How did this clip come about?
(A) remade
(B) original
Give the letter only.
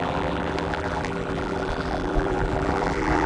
A